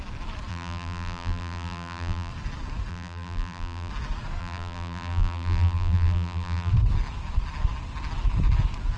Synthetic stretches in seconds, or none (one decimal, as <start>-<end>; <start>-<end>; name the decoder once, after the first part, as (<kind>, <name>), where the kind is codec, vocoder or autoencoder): 0.5-2.3 (vocoder, BigVGAN v2); 2.9-3.9; 4.4-6.7